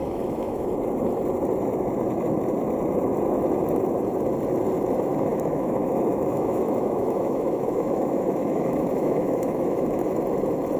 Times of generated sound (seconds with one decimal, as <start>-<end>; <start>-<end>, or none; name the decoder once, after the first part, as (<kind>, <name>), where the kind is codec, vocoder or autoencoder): 0.0-0.7 (autoencoder, DAC-VAE); 5.3-10.2